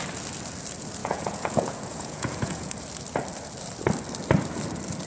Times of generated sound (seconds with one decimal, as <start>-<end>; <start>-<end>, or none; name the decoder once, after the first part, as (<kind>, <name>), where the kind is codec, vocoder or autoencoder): 1.0-2.7 (vocoder, Vocos)

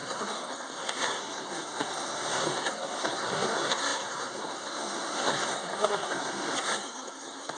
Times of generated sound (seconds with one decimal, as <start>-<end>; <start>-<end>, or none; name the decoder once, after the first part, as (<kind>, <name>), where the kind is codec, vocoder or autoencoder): 0.0-7.6 (codec, SNAC)